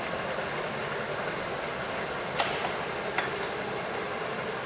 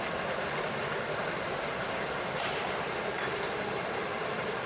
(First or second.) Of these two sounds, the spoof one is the second